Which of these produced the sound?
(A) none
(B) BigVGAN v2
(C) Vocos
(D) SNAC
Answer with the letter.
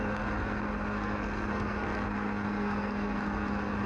D